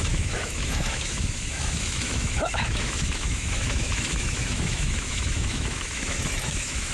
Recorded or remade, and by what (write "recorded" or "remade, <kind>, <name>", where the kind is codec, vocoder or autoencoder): remade, autoencoder, DAC-VAE